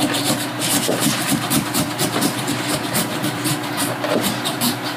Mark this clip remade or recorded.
remade